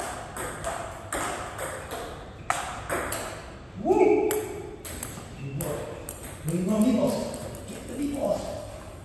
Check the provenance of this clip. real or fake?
real